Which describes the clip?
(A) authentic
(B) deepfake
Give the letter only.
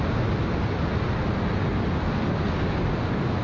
A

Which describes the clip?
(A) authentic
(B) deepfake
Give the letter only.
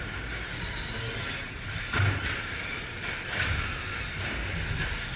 A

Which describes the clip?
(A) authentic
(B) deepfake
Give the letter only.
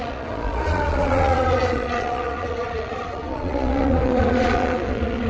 B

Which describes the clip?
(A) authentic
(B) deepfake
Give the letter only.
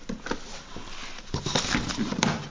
A